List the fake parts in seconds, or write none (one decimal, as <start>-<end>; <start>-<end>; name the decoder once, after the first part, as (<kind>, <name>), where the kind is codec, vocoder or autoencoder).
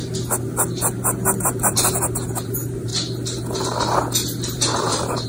1.4-2.9 (vocoder, BigVGAN v2); 4.4-5.3